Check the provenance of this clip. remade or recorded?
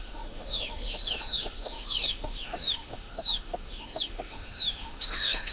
remade